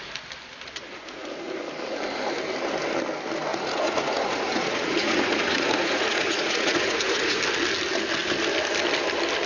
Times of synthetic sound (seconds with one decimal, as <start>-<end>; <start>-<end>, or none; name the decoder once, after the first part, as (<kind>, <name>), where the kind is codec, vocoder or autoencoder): 3.5-7.4 (vocoder, Vocos)